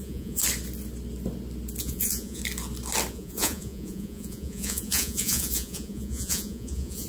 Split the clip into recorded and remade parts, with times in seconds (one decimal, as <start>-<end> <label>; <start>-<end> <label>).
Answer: 0.0-0.4 remade; 0.4-1.8 recorded; 1.8-2.4 remade; 2.4-3.1 recorded; 3.1-7.1 remade